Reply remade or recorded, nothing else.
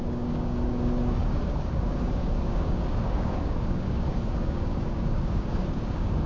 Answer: remade